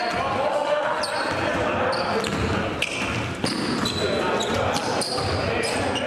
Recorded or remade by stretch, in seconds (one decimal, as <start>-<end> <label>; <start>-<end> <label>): 0.0-0.5 recorded; 0.5-1.0 remade; 1.0-6.1 recorded